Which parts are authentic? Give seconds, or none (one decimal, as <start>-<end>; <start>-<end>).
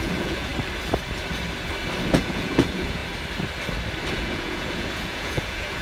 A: 0.5-2.0; 3.0-4.1